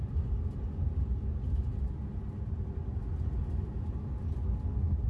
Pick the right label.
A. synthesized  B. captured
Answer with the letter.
B